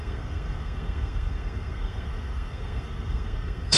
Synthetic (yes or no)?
yes